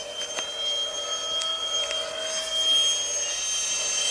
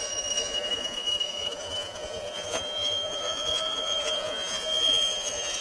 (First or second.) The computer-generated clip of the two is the second